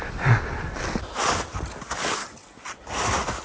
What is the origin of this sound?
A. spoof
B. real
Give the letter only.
B